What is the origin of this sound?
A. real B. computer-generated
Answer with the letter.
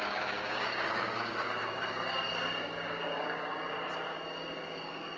B